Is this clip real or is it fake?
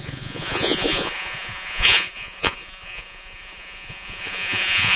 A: fake